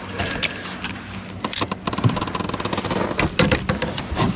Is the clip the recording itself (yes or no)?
yes